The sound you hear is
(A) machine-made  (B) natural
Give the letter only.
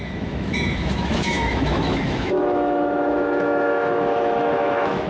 A